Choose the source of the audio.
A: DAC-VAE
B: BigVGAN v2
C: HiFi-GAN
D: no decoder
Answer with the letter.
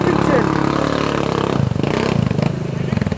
D